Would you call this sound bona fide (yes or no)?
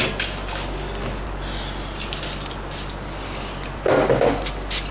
yes